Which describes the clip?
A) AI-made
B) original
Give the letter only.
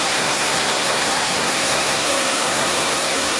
A